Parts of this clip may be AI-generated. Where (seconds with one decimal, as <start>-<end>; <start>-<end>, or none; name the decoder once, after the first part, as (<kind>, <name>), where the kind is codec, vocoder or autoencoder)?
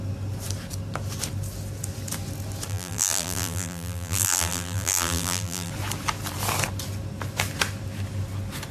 2.7-5.7 (vocoder, BigVGAN v2)